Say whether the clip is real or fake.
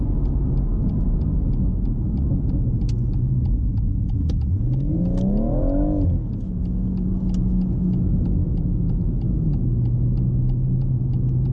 real